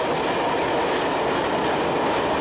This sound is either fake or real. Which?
real